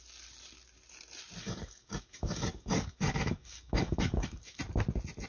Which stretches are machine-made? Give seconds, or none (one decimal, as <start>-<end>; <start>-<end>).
1.4-4.6